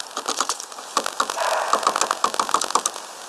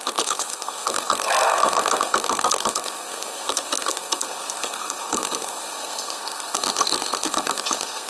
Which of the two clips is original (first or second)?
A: first